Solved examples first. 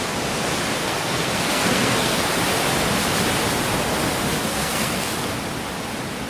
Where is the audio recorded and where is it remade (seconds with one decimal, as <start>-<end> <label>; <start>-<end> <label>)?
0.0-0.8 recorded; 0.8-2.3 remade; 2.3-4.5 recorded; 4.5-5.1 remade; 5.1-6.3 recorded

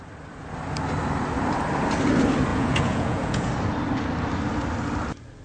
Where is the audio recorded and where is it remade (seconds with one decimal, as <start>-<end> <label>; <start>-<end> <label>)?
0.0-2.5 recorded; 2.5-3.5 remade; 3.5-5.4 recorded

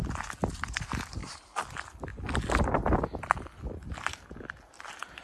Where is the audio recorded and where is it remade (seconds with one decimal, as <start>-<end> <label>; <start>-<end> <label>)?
0.0-5.2 recorded

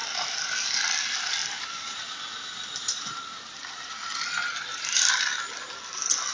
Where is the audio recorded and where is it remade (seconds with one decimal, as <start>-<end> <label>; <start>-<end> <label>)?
0.0-1.4 recorded; 1.4-5.2 remade; 5.2-6.3 recorded

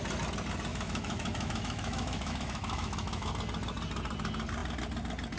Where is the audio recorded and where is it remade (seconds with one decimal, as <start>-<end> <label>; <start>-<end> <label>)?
0.0-0.7 recorded; 0.7-3.3 remade; 3.3-5.4 recorded

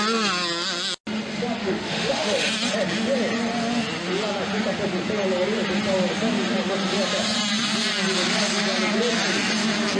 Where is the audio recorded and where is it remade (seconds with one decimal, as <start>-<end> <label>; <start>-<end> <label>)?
0.0-1.6 recorded; 1.6-2.5 remade; 2.5-10.0 recorded